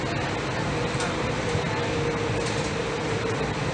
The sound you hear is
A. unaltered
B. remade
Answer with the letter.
A